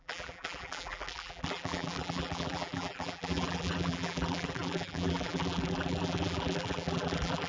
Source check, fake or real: fake